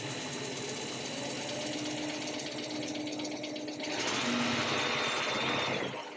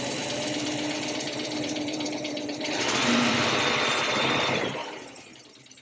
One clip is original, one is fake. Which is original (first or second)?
first